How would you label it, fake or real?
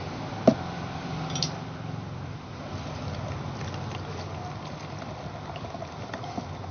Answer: real